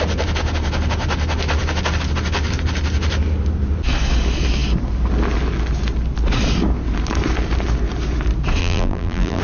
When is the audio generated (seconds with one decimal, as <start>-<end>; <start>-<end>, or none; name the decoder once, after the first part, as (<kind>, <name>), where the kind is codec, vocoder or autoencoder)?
8.6-9.4 (vocoder, BigVGAN v2)